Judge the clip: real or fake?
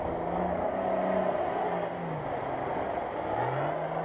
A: real